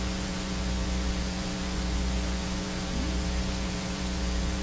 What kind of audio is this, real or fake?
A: fake